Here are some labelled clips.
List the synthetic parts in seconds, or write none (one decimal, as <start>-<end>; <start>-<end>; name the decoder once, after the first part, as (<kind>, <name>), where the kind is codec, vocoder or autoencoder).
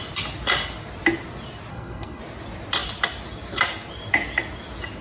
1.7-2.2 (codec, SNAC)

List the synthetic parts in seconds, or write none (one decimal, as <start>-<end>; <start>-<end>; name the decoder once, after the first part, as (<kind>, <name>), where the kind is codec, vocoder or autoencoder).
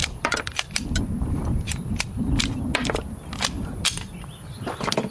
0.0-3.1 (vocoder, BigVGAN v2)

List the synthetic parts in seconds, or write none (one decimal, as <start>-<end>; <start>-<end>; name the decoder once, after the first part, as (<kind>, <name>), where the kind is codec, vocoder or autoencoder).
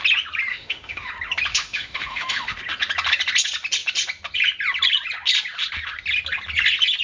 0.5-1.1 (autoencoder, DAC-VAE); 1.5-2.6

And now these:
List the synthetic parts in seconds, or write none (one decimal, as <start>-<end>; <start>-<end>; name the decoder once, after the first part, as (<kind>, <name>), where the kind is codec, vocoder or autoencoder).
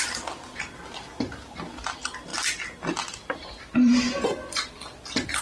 none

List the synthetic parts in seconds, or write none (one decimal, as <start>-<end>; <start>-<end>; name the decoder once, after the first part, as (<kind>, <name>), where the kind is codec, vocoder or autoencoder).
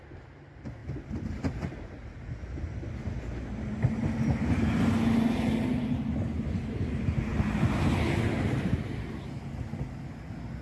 none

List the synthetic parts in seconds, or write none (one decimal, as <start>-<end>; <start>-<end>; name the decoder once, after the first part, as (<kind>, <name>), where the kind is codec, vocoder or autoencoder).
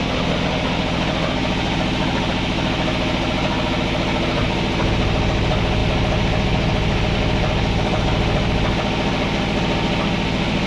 none